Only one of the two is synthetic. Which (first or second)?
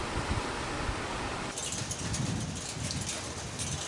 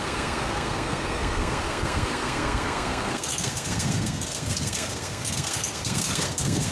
second